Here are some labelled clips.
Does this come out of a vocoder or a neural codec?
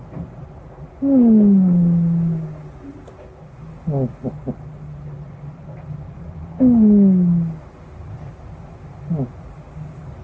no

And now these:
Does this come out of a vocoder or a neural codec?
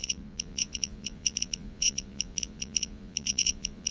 yes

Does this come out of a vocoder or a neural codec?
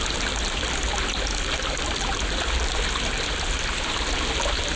no